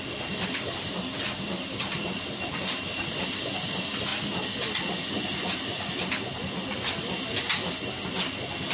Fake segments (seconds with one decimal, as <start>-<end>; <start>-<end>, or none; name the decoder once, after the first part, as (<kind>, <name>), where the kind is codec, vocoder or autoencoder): none